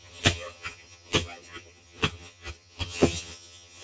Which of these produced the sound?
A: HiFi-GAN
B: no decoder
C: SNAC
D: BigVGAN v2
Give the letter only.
A